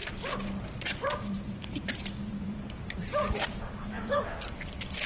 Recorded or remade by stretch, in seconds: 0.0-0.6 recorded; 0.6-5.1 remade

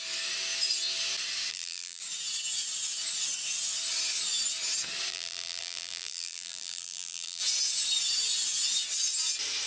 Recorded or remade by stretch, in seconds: 0.0-1.5 recorded; 1.5-2.0 remade; 2.0-5.1 recorded; 5.1-7.4 remade; 7.4-9.7 recorded

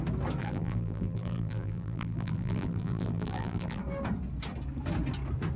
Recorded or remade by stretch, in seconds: 0.0-0.4 recorded; 0.4-3.8 remade; 3.8-5.6 recorded

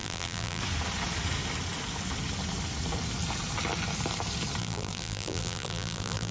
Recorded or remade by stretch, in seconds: 0.0-0.6 remade; 0.6-4.6 recorded; 4.6-6.3 remade

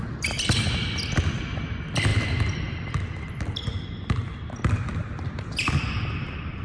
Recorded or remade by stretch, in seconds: 0.0-2.1 recorded; 2.1-6.0 remade; 6.0-6.6 recorded